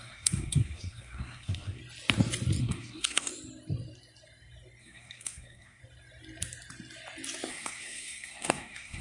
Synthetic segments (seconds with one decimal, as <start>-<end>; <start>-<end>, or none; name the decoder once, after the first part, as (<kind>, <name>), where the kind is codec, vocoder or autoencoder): 0.0-1.8 (codec, SNAC); 2.6-3.3; 4.8-5.8; 7.5-9.0

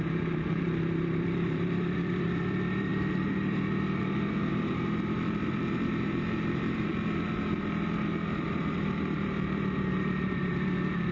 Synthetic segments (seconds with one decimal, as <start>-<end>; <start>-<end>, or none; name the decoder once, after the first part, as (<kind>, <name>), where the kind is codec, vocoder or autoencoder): 0.0-11.1 (vocoder, BigVGAN v2)

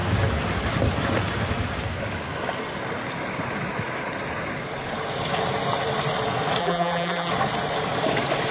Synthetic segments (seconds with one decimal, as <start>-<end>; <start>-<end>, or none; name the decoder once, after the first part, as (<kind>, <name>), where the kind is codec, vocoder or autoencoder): 6.6-7.3 (vocoder, BigVGAN v2)

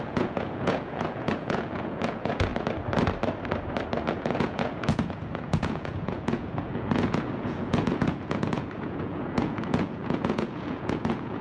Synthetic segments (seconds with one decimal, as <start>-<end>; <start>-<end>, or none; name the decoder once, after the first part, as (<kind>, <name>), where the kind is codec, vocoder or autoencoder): 0.0-2.5 (vocoder, Vocos); 4.1-11.4